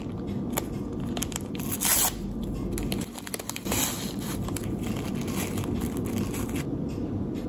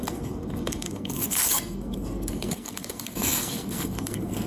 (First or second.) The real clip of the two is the first